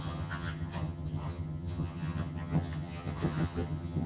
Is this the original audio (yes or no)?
no